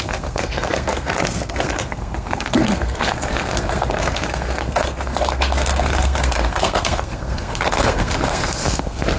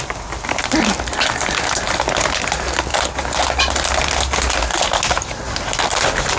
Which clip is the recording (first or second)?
second